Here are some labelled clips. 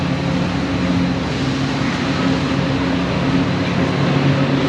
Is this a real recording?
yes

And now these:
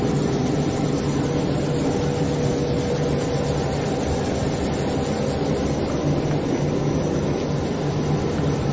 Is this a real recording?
yes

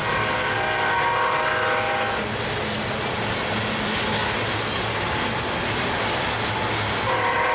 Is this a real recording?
yes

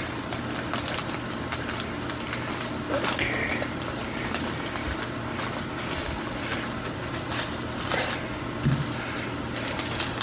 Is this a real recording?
yes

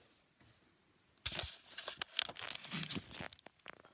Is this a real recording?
yes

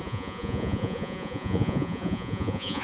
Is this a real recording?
no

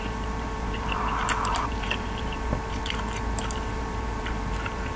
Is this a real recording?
no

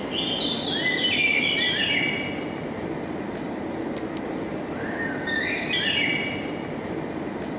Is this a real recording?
yes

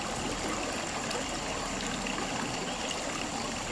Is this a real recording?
yes